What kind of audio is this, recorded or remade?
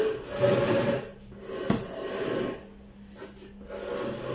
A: recorded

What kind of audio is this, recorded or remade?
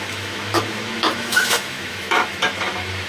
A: remade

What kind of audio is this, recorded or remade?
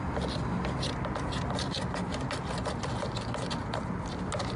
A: recorded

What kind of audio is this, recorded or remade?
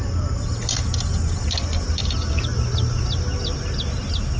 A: recorded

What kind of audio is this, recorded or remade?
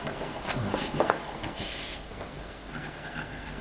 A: remade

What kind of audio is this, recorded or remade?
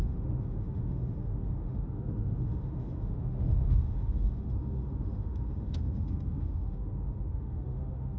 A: remade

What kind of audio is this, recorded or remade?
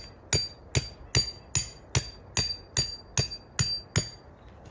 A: recorded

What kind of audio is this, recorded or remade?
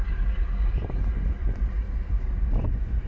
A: recorded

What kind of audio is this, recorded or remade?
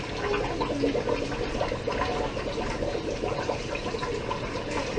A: recorded